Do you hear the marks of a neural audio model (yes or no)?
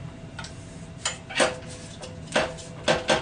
no